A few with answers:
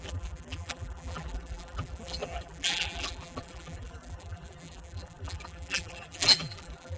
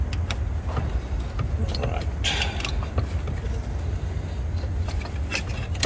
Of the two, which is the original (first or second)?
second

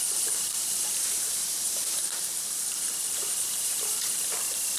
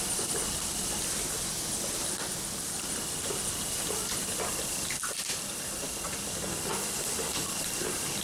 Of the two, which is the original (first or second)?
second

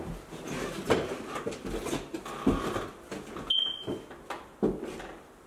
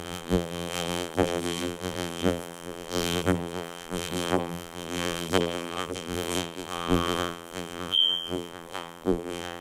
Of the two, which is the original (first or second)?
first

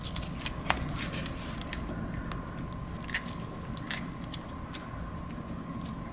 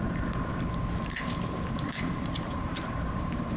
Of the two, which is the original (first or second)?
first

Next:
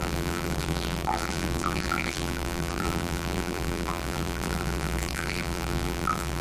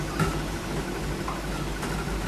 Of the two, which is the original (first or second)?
second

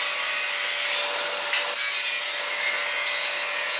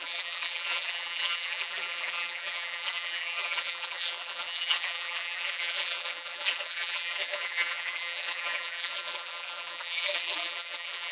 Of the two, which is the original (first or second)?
first